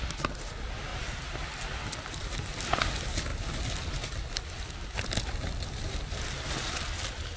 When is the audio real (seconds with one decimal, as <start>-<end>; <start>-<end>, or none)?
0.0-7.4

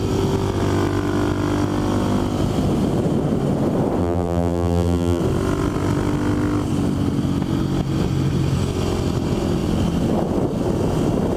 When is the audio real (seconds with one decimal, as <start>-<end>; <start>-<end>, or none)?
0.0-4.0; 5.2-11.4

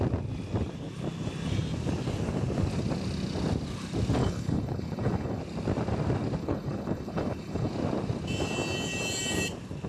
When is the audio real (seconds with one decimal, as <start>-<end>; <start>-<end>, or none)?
0.0-4.2; 5.4-6.4; 7.7-9.9